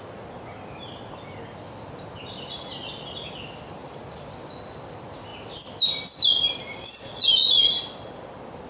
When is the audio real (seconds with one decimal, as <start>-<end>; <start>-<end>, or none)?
0.0-6.7; 7.7-8.7